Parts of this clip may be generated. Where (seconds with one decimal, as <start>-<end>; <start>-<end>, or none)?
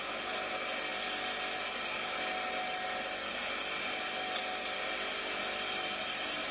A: none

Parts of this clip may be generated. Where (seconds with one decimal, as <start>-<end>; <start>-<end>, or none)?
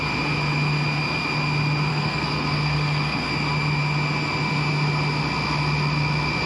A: 1.9-3.3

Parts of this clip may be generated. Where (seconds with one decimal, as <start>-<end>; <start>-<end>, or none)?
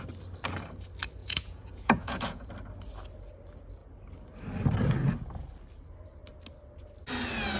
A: 1.2-2.5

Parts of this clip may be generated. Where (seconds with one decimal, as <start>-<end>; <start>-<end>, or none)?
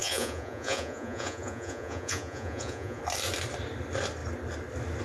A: 0.0-3.0